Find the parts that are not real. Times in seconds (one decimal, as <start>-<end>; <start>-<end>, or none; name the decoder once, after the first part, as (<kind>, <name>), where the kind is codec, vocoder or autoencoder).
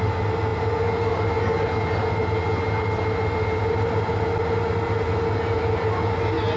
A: none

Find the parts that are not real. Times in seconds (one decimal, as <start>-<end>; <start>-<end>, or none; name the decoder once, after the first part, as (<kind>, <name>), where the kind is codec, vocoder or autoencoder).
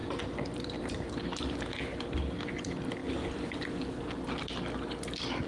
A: 0.0-1.1 (vocoder, BigVGAN v2)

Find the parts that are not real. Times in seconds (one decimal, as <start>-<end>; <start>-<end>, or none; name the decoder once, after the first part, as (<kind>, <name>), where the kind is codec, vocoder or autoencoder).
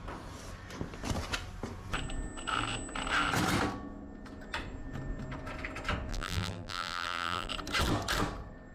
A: 6.1-7.5 (vocoder, BigVGAN v2)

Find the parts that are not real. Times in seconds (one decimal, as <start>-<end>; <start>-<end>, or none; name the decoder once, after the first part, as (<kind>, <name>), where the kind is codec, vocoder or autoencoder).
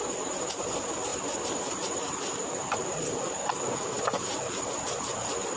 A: none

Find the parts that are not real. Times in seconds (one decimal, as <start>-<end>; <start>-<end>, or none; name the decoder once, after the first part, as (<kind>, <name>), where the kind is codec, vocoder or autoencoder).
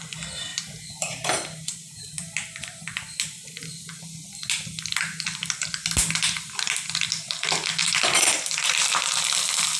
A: 0.5-3.6 (vocoder, BigVGAN v2); 7.8-9.1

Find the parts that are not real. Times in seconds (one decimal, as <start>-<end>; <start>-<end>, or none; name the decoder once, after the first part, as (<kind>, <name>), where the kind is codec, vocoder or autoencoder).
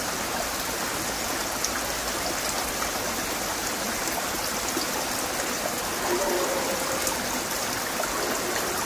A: none